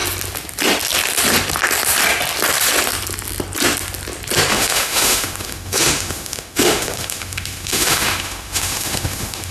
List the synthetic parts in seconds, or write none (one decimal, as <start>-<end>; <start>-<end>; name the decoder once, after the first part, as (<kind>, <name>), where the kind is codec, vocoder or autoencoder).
4.5-9.5 (autoencoder, DAC-VAE)